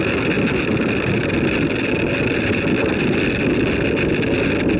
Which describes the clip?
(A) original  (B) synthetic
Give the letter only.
A